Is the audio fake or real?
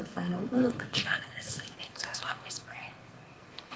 fake